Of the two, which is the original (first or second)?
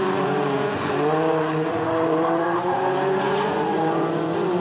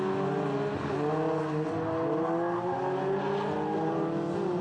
second